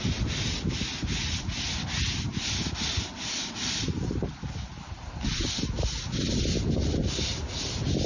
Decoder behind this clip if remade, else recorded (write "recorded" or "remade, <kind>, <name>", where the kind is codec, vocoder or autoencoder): recorded